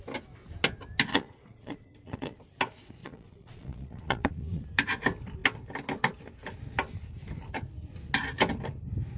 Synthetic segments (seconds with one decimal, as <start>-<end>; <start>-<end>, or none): 1.1-2.4; 3.0-4.6